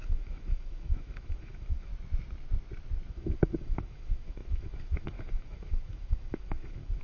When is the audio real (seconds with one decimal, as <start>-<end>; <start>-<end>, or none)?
1.9-3.1